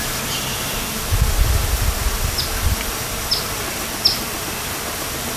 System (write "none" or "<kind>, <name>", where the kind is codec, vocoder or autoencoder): none